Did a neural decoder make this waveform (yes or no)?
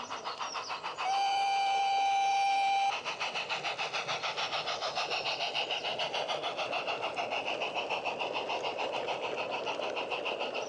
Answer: no